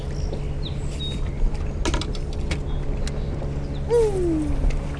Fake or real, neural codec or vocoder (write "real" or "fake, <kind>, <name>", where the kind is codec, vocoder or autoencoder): real